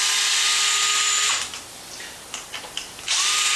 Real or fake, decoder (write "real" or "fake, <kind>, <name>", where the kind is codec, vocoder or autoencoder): real